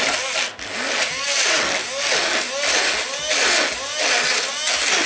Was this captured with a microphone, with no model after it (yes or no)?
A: yes